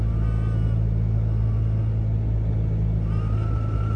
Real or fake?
real